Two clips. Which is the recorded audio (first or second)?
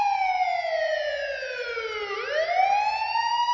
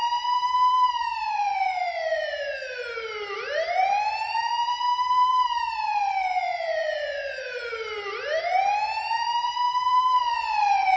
first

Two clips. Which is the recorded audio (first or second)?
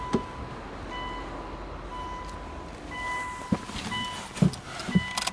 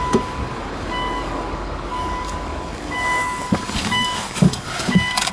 first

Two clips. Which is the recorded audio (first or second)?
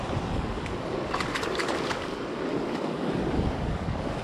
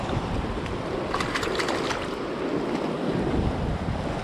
second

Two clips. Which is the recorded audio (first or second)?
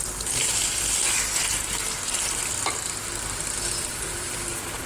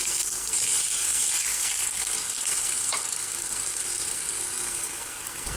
first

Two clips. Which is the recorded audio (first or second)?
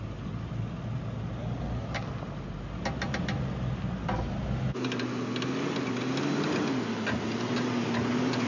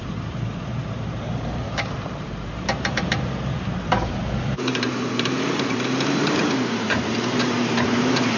first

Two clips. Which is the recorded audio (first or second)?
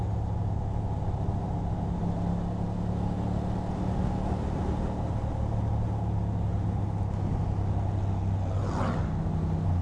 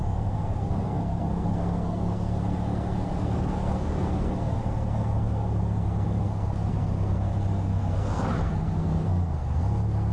first